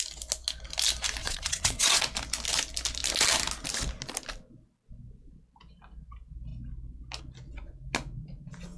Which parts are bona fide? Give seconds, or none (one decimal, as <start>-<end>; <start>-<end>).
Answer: 0.0-1.2; 2.0-8.8